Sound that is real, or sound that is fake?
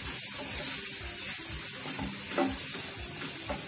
real